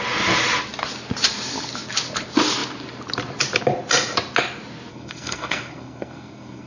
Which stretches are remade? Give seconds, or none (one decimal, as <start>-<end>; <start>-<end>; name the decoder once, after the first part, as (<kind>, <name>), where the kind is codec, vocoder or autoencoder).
4.9-6.7 (codec, SNAC)